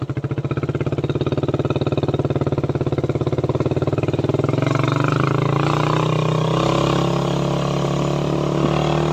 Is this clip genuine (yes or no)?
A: yes